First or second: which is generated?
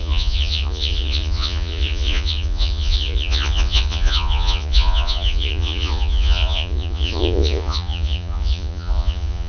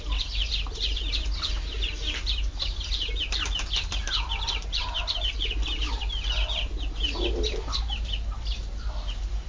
first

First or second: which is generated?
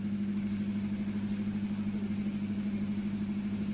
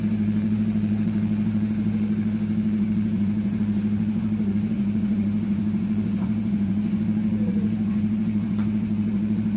second